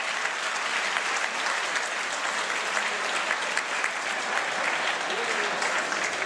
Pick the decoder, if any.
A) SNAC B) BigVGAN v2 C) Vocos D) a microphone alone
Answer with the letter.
D